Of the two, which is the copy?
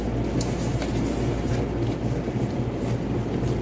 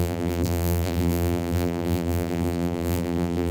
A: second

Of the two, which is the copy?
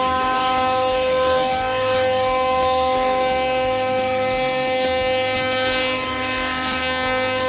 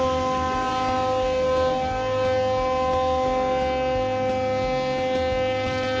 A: first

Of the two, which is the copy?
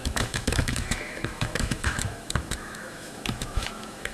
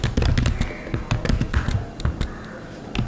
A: first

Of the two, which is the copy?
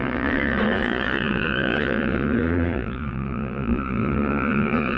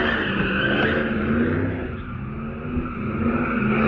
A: first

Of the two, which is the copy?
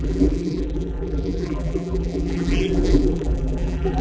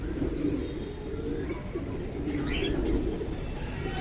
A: first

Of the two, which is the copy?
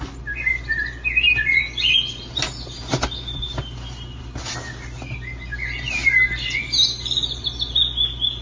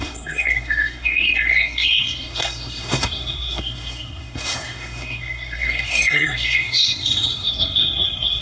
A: second